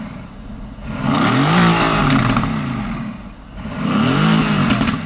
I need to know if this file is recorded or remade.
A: recorded